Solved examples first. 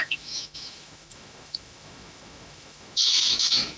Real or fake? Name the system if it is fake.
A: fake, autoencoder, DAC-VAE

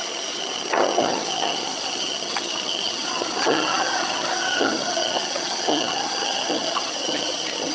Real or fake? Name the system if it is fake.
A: fake, vocoder, HiFi-GAN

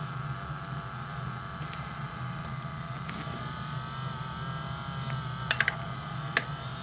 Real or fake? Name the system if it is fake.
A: real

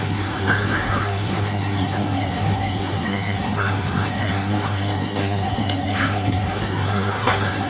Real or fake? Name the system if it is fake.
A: fake, codec, SNAC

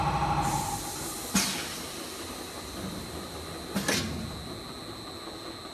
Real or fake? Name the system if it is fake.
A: real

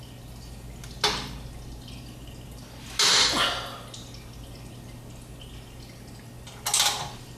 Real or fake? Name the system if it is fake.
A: real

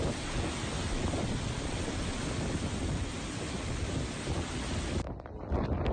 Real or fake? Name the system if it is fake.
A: real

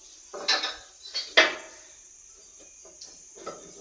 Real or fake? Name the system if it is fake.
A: real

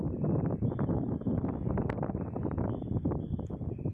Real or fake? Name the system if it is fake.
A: real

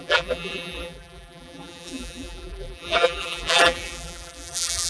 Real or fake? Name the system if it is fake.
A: fake, vocoder, BigVGAN v2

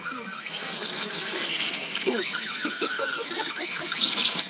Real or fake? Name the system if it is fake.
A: fake, codec, SNAC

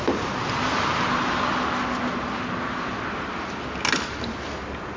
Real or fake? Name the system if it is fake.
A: real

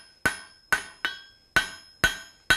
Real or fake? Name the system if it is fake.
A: real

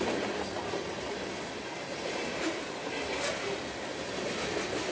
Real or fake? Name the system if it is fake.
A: real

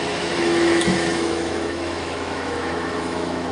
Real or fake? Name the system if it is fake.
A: fake, autoencoder, DAC-VAE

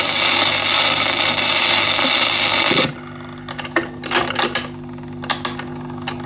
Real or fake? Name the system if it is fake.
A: real